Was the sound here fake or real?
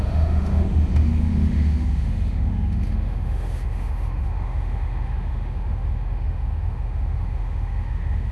fake